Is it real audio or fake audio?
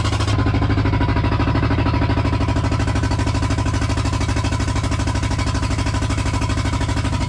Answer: real